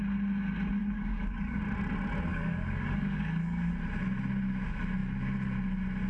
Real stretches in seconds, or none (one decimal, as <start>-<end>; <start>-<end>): 0.0-0.8; 1.6-2.3; 3.7-6.1